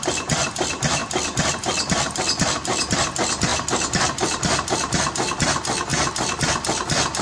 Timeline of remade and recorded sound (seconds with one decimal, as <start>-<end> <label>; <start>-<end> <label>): 0.0-7.2 recorded